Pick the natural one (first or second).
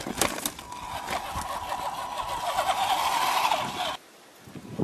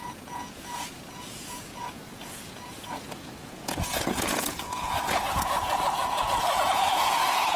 first